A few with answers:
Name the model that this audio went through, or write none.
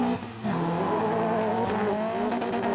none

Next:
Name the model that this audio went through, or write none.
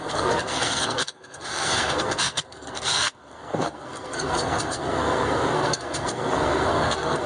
codec, SNAC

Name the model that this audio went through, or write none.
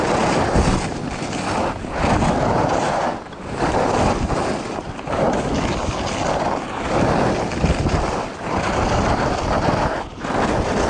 none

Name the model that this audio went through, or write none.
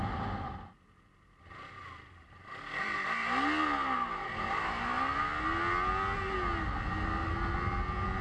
none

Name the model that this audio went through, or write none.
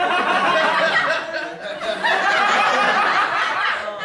none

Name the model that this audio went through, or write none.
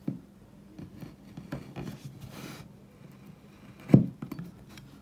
none